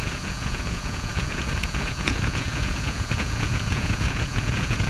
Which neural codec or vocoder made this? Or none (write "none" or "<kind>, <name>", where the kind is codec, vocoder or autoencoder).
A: vocoder, Vocos